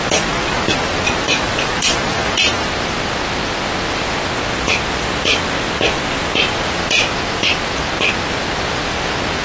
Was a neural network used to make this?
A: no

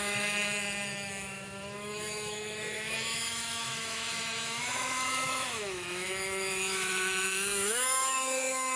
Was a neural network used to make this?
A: yes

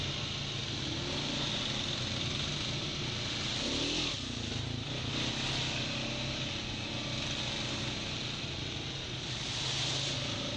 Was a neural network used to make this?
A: no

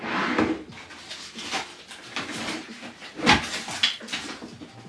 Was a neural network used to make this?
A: no